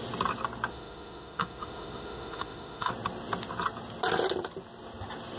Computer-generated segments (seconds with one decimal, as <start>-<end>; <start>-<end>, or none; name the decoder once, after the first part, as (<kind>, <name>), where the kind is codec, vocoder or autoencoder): 0.7-2.9 (autoencoder, DAC-VAE)